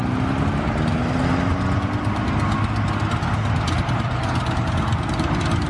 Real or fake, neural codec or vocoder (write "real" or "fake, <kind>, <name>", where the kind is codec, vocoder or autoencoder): real